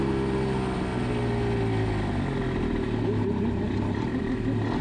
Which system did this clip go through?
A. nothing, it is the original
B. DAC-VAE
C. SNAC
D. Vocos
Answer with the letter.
A